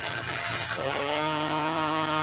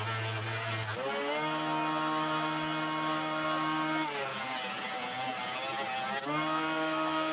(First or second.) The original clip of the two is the second